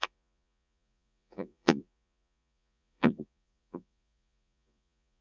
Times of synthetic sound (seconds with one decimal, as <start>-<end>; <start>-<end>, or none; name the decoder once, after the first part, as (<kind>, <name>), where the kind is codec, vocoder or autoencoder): 0.0-5.2 (vocoder, Vocos)